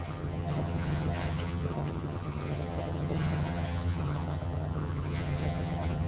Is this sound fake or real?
fake